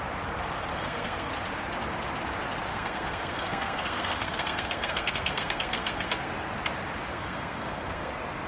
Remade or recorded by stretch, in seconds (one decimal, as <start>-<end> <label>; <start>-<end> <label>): 0.0-0.7 recorded; 0.7-1.3 remade; 1.3-2.7 recorded; 2.7-6.3 remade; 6.3-7.1 recorded; 7.1-8.1 remade; 8.1-8.5 recorded